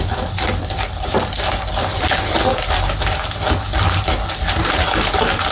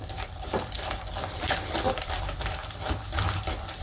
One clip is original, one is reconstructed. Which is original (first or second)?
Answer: first